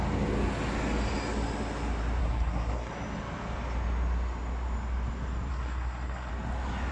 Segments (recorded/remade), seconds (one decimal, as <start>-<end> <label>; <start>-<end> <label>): 0.0-2.2 recorded; 2.2-2.9 remade; 2.9-5.5 recorded; 5.5-6.3 remade; 6.3-6.9 recorded